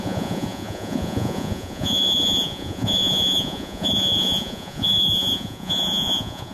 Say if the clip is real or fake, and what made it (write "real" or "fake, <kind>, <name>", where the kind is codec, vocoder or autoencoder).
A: fake, vocoder, Vocos